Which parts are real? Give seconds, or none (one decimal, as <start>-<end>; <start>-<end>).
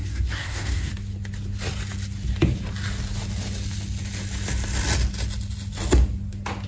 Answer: 0.9-6.7